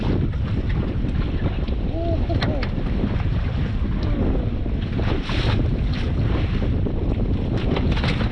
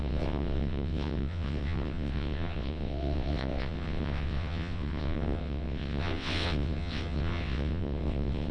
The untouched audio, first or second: first